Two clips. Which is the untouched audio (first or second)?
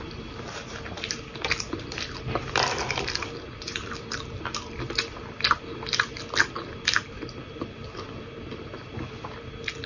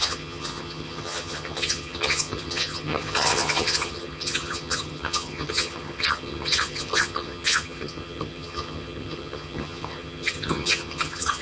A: first